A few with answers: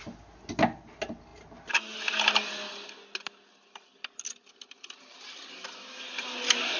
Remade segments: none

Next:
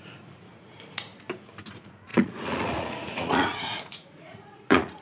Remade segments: 0.0-1.1; 1.7-5.0

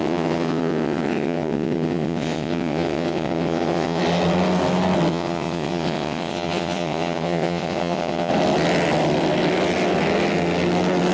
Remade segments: 0.0-4.0; 5.1-8.3

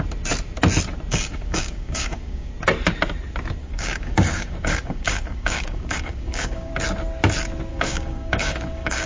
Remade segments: 1.1-2.5; 3.6-6.7; 7.7-9.1

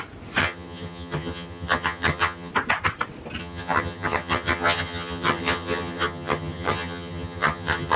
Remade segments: 0.4-2.5; 3.4-8.0

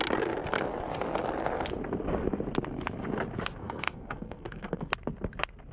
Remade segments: 3.6-4.9